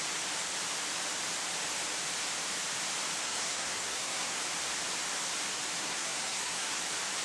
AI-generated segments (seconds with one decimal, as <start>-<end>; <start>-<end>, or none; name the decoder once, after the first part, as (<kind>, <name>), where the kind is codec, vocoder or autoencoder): 3.2-4.4 (codec, SNAC); 5.8-6.8